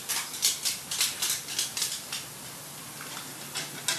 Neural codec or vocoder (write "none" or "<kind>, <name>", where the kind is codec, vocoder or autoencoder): none